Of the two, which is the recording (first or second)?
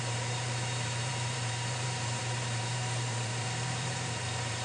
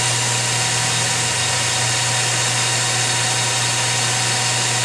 second